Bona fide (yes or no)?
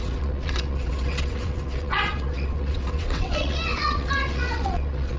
no